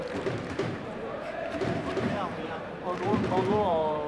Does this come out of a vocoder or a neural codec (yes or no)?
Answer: yes